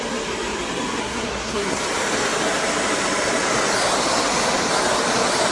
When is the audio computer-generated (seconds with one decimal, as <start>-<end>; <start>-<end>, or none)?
1.0-1.8